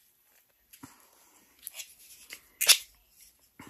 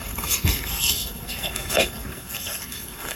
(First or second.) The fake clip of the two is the second